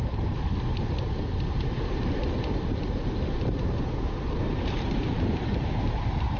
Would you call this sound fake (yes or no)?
yes